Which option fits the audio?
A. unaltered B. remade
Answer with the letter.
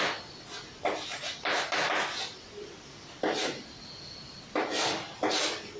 A